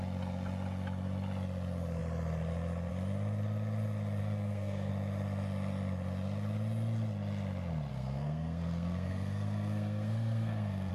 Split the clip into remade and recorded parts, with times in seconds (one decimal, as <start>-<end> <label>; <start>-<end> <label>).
0.0-4.2 recorded; 4.2-4.9 remade; 4.9-7.9 recorded; 7.9-10.9 remade